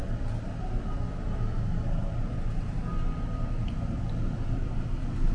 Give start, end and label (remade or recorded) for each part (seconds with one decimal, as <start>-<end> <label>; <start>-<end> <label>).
0.0-5.3 recorded